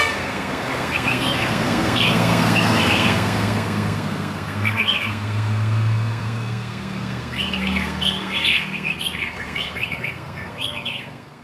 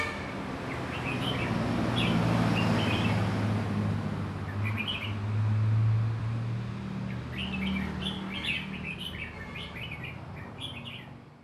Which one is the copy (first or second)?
first